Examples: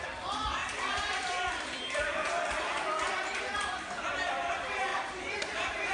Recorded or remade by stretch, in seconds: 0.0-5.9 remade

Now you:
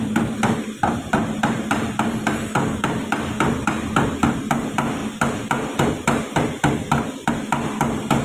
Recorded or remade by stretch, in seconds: 0.0-5.0 recorded; 5.0-7.3 remade; 7.3-8.2 recorded

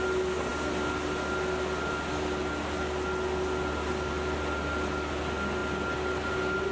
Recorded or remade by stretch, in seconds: 0.0-6.7 recorded

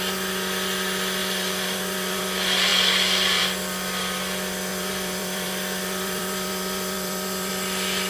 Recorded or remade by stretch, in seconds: 0.0-1.2 recorded; 1.2-2.2 remade; 2.2-4.7 recorded; 4.7-7.5 remade; 7.5-8.1 recorded

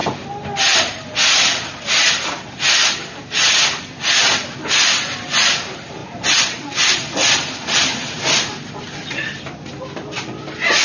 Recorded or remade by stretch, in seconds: 0.0-10.8 recorded